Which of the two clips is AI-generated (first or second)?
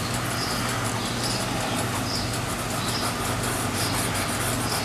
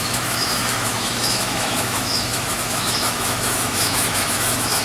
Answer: second